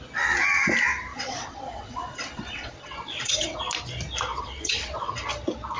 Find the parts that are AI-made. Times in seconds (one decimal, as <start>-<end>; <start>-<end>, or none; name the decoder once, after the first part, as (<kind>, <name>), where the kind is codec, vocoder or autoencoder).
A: 1.1-3.6 (vocoder, WaveNeXt); 4.3-5.1